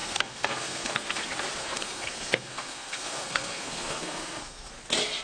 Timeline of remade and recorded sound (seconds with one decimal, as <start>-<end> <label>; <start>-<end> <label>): 0.0-1.2 remade; 1.2-1.6 recorded; 1.6-4.7 remade; 4.7-5.2 recorded